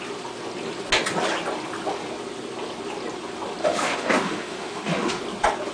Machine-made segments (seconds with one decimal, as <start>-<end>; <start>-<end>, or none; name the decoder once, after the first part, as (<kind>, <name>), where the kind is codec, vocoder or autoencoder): 3.6-5.2 (autoencoder, DAC-VAE)

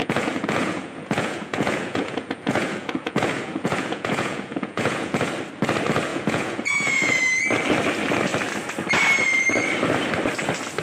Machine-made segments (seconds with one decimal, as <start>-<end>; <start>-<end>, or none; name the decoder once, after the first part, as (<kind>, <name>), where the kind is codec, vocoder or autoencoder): 0.0-5.3 (vocoder, Vocos); 6.1-7.2

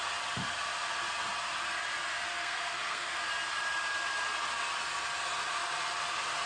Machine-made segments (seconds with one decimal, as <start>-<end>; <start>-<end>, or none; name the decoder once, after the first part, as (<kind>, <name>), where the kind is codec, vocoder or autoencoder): 2.4-3.1 (codec, SNAC)

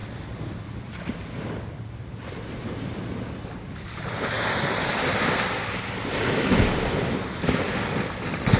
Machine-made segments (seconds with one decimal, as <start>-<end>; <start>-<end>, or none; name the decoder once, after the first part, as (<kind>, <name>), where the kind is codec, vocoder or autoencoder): 0.0-4.3 (vocoder, BigVGAN v2)